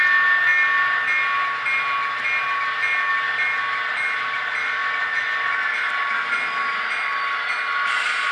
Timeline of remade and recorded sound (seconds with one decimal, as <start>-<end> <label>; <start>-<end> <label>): 0.0-8.3 recorded

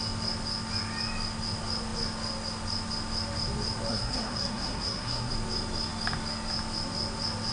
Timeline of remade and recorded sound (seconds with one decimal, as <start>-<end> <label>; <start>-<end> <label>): 0.0-3.9 recorded; 3.9-5.3 remade; 5.3-7.5 recorded

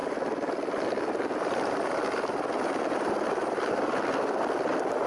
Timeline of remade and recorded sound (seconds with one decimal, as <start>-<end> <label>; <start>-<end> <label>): 0.0-5.1 recorded

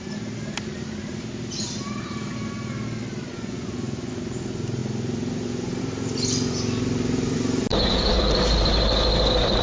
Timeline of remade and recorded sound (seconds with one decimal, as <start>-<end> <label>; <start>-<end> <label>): 0.0-3.3 recorded; 3.3-4.2 remade; 4.2-9.6 recorded

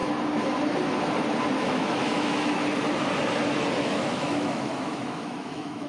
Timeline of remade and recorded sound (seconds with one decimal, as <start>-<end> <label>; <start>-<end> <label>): 0.0-1.6 recorded; 1.6-2.6 remade; 2.6-3.8 recorded; 3.8-5.9 remade

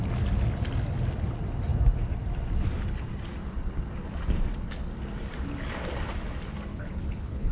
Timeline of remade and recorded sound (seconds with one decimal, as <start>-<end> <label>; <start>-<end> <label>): 0.0-6.7 recorded; 6.7-7.5 remade

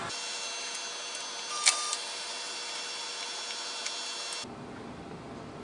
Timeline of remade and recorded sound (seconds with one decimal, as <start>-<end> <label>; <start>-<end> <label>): 0.0-5.6 recorded